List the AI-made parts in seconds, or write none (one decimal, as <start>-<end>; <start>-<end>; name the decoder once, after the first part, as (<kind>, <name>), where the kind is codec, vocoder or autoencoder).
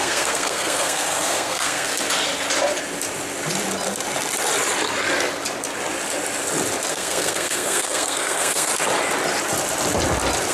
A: 0.0-1.9 (codec, SNAC); 6.9-8.7